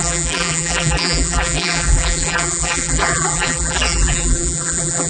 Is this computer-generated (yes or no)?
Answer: yes